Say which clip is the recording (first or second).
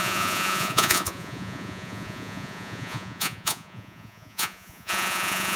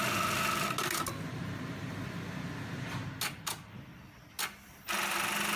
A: second